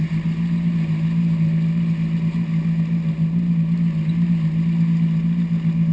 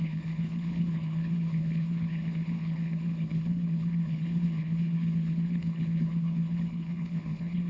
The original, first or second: first